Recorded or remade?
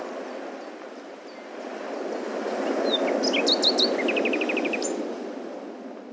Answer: recorded